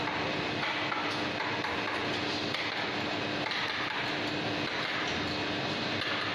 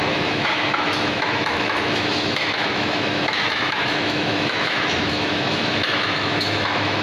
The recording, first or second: first